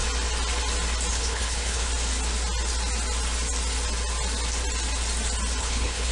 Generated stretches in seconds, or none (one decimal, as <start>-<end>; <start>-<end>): 1.1-1.9; 5.6-6.1